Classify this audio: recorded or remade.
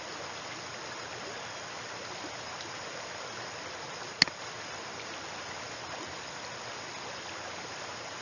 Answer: recorded